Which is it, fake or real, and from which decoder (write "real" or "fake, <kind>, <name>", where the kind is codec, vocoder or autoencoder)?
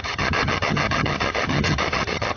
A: fake, vocoder, HiFi-GAN